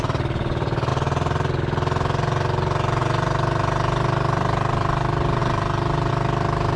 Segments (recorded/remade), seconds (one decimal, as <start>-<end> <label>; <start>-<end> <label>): 0.0-6.8 recorded